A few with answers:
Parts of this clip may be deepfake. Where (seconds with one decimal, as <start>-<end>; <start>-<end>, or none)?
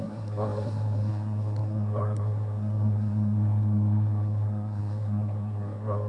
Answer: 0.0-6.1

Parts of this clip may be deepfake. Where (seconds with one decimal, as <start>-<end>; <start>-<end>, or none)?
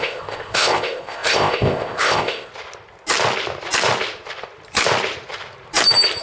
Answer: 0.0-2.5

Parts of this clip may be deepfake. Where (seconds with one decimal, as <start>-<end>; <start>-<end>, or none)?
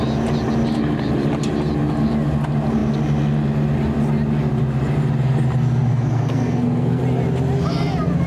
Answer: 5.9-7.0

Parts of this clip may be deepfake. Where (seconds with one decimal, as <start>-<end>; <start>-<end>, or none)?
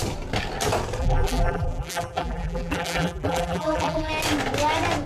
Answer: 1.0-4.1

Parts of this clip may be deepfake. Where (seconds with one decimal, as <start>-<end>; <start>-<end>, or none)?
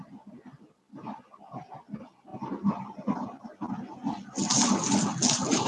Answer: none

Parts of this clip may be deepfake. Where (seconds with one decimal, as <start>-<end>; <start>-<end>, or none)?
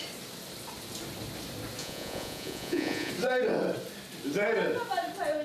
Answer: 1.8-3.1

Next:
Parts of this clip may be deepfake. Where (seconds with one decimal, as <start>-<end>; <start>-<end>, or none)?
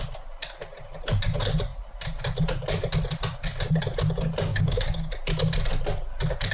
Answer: 4.5-5.1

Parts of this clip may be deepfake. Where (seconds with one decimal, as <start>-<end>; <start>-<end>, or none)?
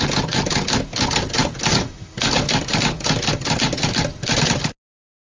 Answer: none